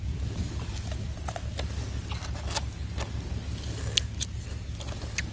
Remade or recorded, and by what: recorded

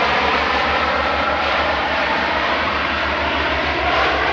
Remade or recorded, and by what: remade, vocoder, BigVGAN v2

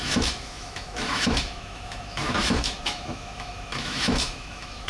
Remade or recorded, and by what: remade, autoencoder, DAC-VAE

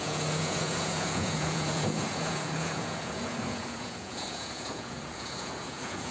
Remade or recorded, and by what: remade, vocoder, Vocos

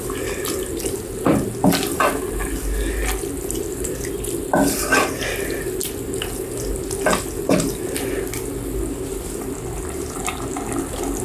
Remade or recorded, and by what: recorded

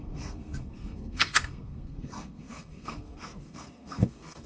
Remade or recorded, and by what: remade, codec, SNAC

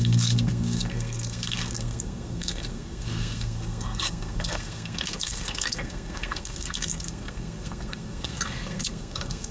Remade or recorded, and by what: remade, codec, SNAC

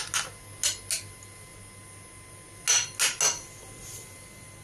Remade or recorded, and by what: recorded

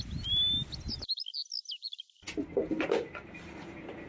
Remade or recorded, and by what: recorded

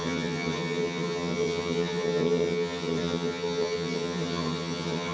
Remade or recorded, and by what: remade, vocoder, HiFi-GAN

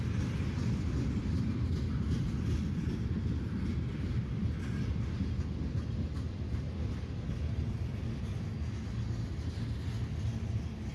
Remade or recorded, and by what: recorded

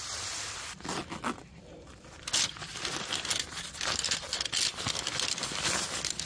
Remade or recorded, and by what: recorded